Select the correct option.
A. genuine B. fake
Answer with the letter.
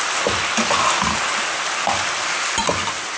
A